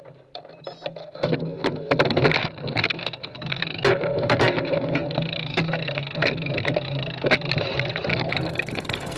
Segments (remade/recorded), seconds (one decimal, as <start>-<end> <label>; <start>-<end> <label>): 0.0-1.0 recorded; 1.0-1.9 remade; 1.9-2.4 recorded; 2.4-7.3 remade; 7.3-8.1 recorded; 8.1-9.2 remade